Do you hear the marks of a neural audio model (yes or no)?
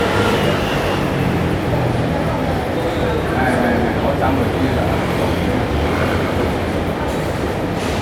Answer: no